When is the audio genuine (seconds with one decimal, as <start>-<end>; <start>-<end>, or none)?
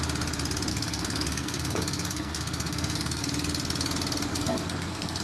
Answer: 0.0-0.7; 3.2-4.3